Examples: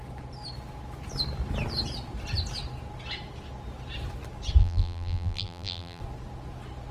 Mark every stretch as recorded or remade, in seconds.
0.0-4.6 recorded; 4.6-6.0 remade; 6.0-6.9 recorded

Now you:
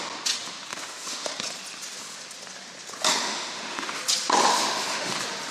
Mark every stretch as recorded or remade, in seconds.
0.0-0.7 recorded; 0.7-1.3 remade; 1.3-3.2 recorded; 3.2-4.0 remade; 4.0-4.5 recorded; 4.5-5.1 remade; 5.1-5.5 recorded

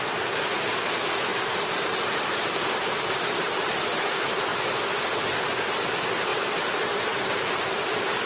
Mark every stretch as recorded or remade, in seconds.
0.0-1.3 recorded; 1.3-3.7 remade; 3.7-6.3 recorded; 6.3-7.6 remade; 7.6-8.3 recorded